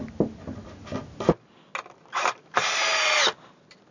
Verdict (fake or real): real